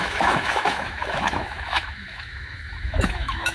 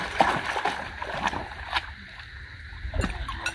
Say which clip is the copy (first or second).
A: first